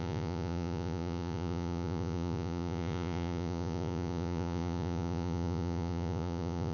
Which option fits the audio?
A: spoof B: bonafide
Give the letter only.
A